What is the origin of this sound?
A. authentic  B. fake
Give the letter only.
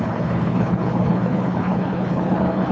B